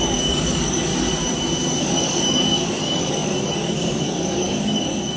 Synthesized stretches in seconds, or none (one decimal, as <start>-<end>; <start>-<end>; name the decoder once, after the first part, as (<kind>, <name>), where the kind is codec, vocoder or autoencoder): 0.0-0.9 (codec, DAC); 1.8-5.2